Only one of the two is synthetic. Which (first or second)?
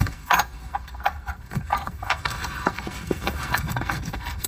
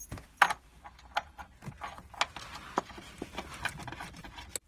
first